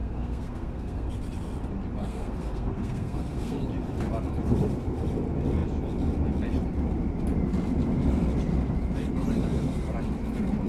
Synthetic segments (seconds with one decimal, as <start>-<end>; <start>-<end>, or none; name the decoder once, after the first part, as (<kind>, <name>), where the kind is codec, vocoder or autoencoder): 0.0-1.1 (codec, SNAC); 2.0-3.6